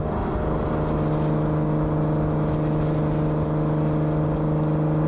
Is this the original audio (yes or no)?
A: yes